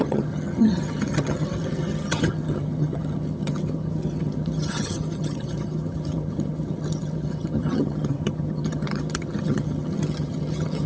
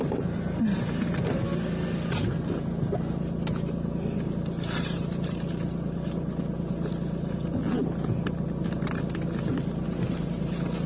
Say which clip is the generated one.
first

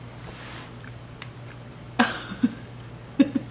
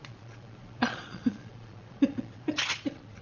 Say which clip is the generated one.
second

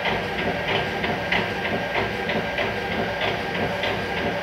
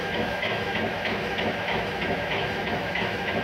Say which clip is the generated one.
second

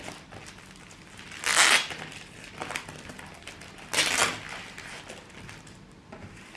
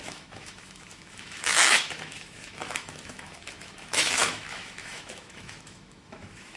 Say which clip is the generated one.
second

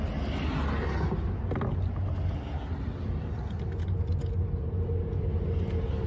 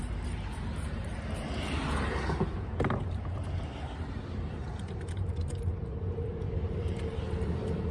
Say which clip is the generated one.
second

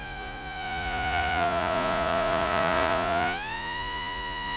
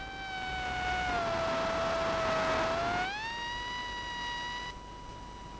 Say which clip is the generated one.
first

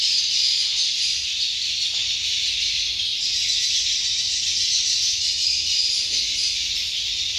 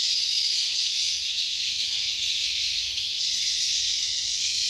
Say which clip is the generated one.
second